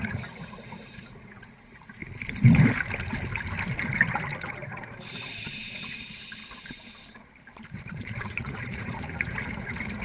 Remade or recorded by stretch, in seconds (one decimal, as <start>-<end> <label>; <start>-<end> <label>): 0.0-2.0 remade; 2.0-4.5 recorded; 4.5-6.4 remade; 6.4-7.7 recorded; 7.7-10.0 remade

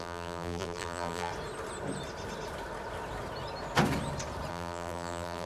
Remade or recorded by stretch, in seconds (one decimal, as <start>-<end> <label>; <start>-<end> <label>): 0.0-1.3 remade; 1.3-4.5 recorded; 4.5-5.4 remade

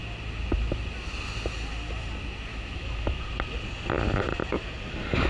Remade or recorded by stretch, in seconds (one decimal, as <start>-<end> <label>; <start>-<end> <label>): 0.0-2.5 recorded; 2.5-3.2 remade; 3.2-5.3 recorded

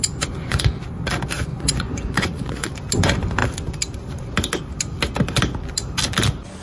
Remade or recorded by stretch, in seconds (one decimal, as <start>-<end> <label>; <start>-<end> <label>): 0.0-0.7 remade; 0.7-1.5 recorded; 1.5-2.7 remade; 2.7-6.6 recorded